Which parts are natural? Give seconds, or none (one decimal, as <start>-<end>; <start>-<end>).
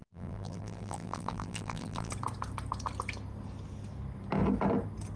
2.1-5.2